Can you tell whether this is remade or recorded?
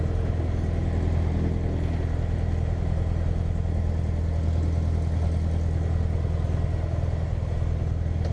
recorded